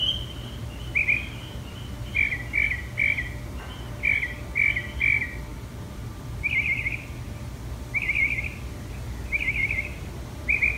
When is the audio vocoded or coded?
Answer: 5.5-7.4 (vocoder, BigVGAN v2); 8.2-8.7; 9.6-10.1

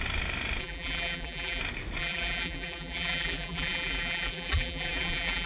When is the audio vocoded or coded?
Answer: 0.6-1.6 (vocoder, BigVGAN v2); 2.0-5.5

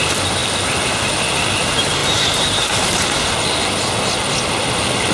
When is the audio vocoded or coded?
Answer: 2.0-3.3 (vocoder, BigVGAN v2)

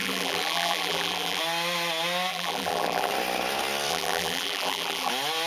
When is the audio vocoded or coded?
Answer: 0.0-1.4 (vocoder, BigVGAN v2); 2.3-3.1; 3.9-5.1

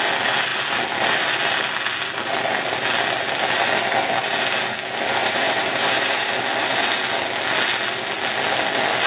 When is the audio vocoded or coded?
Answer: 5.2-6.3 (vocoder, BigVGAN v2)